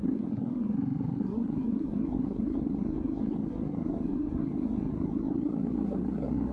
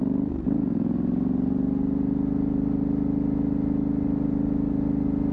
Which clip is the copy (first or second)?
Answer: first